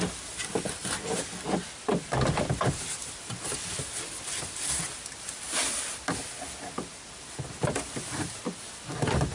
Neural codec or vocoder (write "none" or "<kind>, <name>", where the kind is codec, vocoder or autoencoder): none